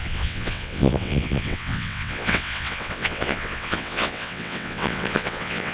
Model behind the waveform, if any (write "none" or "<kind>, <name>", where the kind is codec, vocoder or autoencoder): vocoder, WaveNeXt